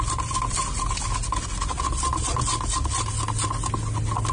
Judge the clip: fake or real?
real